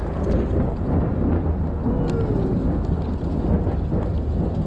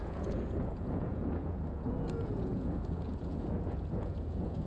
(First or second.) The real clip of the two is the first